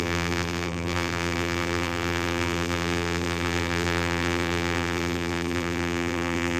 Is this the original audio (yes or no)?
no